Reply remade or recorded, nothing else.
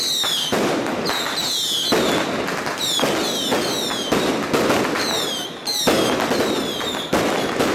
recorded